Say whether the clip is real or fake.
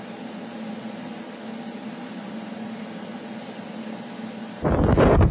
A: real